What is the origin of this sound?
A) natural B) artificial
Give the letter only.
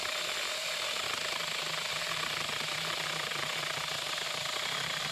A